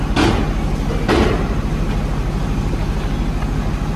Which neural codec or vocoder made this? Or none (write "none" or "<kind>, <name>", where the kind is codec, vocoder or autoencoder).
none